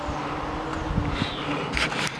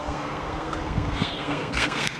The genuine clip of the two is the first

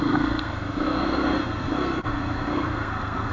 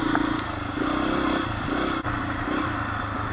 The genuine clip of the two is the second